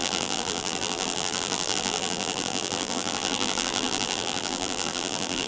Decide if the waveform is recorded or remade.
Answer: remade